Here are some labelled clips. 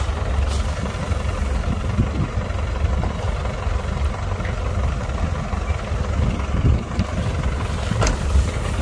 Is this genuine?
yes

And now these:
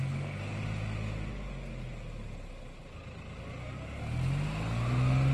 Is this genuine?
yes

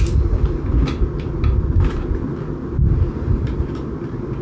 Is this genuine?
yes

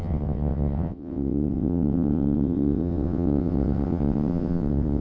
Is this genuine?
no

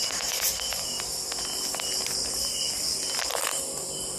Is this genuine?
no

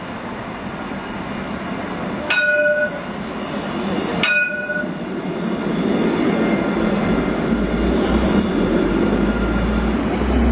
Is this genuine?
yes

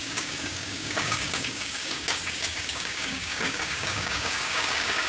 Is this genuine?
no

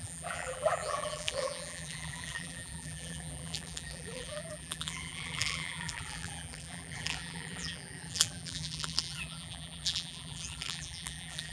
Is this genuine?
no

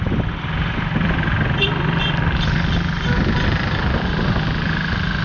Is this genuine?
yes